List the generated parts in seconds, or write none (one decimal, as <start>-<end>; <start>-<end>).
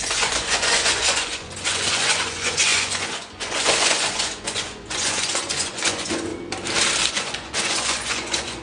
0.0-6.3; 7.1-8.6